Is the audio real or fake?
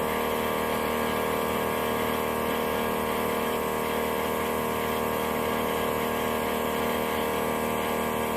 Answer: real